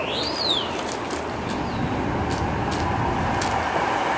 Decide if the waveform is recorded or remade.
recorded